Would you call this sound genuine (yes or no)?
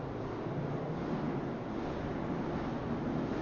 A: yes